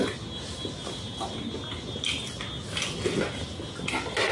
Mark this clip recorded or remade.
recorded